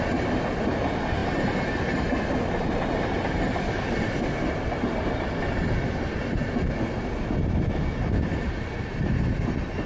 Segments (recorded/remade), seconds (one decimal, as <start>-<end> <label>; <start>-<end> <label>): 0.0-9.9 recorded